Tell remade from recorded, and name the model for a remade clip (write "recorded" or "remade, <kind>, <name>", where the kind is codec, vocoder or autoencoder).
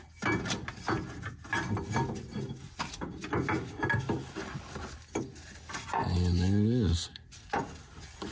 recorded